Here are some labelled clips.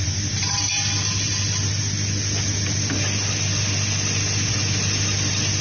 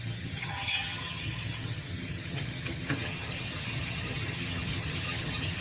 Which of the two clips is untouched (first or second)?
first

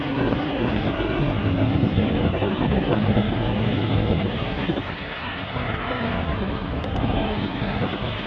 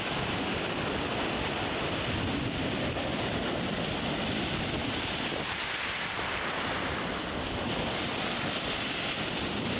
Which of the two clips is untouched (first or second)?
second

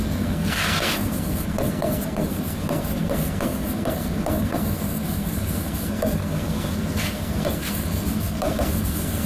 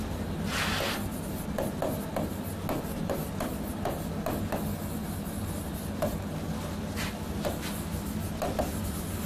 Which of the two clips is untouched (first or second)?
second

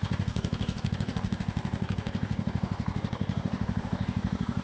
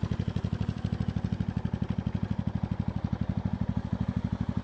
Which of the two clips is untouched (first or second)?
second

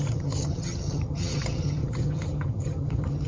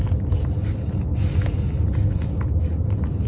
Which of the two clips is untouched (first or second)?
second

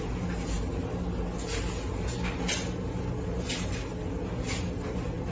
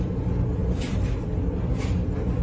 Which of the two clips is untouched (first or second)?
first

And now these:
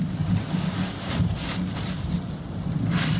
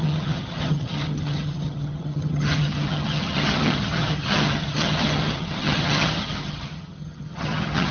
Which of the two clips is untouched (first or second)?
first